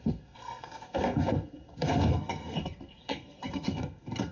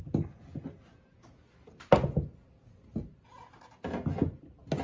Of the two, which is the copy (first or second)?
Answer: first